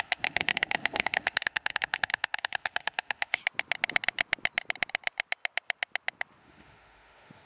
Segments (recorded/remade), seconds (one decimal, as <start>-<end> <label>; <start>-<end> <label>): 0.0-3.4 remade; 3.4-6.4 recorded; 6.4-7.5 remade